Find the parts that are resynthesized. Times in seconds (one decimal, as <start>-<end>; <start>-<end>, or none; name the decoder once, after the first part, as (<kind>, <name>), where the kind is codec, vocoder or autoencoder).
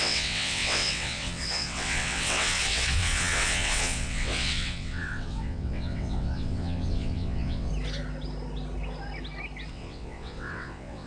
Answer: 0.0-7.7 (vocoder, WaveNeXt); 9.7-11.1